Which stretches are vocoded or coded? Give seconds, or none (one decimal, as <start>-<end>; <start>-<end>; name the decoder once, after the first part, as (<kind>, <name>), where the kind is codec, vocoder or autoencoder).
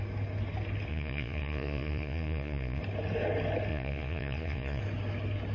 0.9-2.8 (vocoder, Vocos); 3.7-4.8